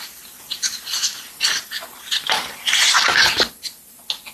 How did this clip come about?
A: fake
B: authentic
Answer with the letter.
B